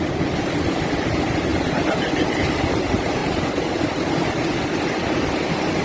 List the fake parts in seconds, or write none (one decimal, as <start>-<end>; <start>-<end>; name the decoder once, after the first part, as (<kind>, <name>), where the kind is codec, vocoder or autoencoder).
none